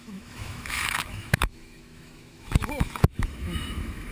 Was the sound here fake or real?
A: fake